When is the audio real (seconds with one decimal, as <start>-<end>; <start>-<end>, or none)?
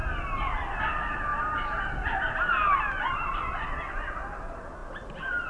0.0-5.5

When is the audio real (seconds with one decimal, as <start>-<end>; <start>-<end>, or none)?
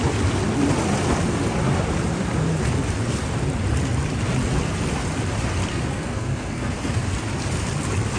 0.0-5.7; 7.0-8.2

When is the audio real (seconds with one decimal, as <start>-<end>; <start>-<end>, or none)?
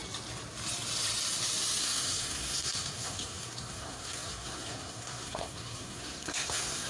0.0-1.8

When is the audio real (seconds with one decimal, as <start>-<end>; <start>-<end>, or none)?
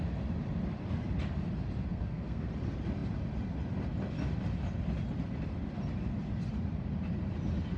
0.0-1.9; 2.5-7.8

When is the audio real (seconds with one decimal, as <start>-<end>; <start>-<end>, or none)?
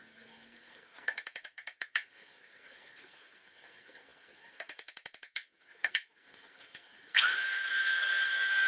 none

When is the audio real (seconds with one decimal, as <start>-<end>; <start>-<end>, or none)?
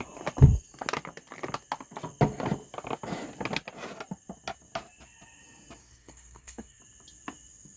0.0-5.8; 6.8-7.8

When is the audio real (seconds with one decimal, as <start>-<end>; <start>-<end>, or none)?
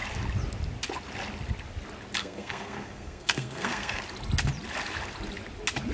0.0-2.2; 4.0-5.9